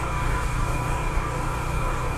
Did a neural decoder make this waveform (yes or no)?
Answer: yes